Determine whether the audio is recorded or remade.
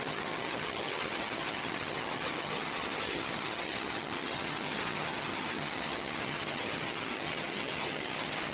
remade